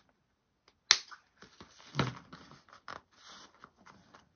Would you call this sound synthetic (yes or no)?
no